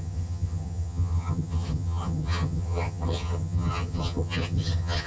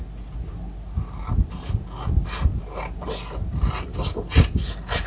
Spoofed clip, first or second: first